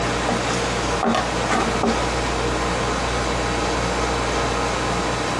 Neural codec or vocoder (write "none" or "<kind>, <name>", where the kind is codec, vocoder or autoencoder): none